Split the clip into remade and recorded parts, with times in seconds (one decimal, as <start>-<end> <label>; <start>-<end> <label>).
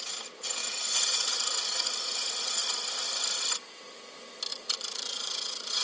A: 0.0-2.6 remade; 2.6-4.5 recorded; 4.5-5.8 remade